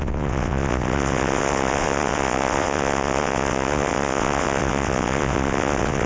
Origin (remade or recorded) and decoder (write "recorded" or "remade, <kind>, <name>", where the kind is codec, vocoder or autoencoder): remade, vocoder, WaveNeXt